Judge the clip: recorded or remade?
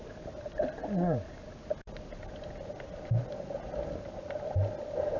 recorded